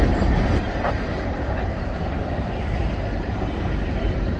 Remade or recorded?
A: remade